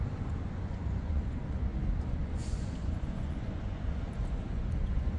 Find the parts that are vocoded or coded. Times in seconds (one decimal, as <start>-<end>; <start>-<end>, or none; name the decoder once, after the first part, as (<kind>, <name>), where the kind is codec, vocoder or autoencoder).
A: 0.0-5.2 (vocoder, Vocos)